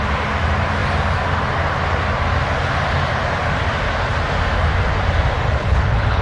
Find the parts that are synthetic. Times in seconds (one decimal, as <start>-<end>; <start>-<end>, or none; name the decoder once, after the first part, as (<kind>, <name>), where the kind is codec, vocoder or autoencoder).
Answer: 5.6-6.2 (codec, HILCodec)